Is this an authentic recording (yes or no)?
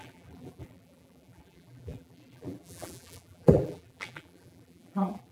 no